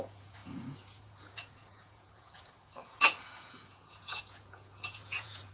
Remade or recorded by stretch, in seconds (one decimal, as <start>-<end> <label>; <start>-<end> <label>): 0.0-5.5 remade